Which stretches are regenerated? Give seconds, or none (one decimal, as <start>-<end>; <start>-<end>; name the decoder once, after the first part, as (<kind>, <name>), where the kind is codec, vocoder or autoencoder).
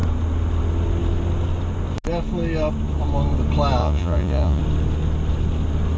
3.8-4.6 (vocoder, Vocos)